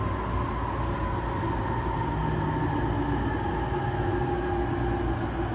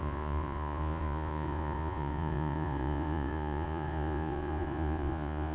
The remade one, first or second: second